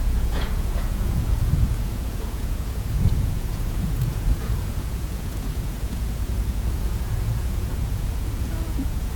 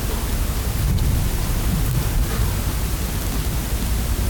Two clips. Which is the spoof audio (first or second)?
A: first